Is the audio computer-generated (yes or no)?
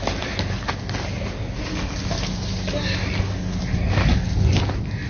no